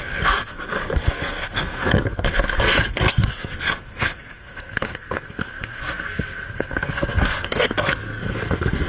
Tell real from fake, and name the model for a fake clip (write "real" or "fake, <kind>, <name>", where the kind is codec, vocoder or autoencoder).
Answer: fake, codec, SNAC